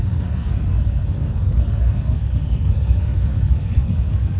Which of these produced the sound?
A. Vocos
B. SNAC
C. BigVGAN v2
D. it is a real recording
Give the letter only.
B